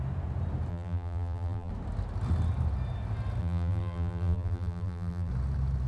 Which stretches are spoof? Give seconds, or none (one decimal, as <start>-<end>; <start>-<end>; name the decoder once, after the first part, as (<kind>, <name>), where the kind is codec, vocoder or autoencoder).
0.7-1.7 (vocoder, BigVGAN v2); 3.4-5.3

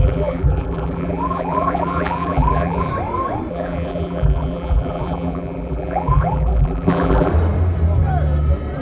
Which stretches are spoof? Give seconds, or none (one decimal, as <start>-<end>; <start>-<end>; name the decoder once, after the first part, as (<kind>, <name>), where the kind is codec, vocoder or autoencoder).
0.0-2.9 (vocoder, BigVGAN v2); 3.5-7.3

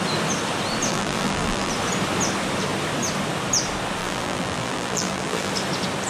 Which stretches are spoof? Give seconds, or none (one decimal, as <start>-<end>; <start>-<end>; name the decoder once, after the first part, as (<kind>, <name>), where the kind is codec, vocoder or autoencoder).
0.9-1.7 (vocoder, BigVGAN v2); 4.0-5.5